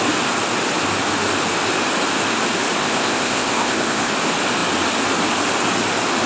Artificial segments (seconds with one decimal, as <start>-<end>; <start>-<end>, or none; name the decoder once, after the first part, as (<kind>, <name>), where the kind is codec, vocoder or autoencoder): 2.8-4.1 (codec, ZipCodec)